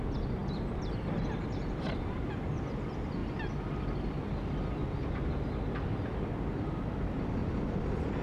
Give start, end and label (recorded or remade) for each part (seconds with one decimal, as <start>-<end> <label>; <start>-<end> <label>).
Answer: 0.0-0.4 remade; 0.4-2.2 recorded; 2.2-3.2 remade; 3.2-6.6 recorded; 6.6-8.2 remade